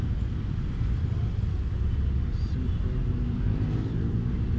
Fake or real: real